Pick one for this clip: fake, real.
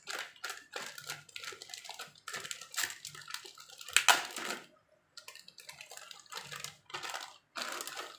real